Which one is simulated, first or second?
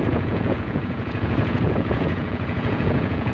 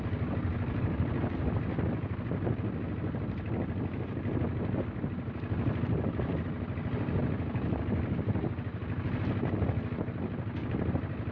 first